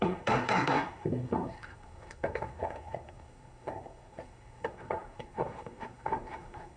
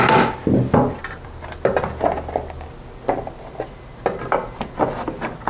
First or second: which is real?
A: second